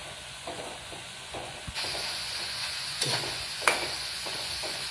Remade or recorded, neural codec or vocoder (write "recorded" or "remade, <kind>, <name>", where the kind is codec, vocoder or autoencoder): remade, vocoder, Vocos